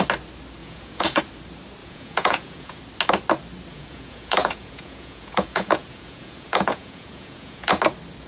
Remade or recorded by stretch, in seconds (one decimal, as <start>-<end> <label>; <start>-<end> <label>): 0.0-0.6 recorded; 0.6-1.2 remade; 1.2-1.8 recorded; 1.8-2.8 remade; 2.8-3.7 recorded; 3.7-7.8 remade; 7.8-8.3 recorded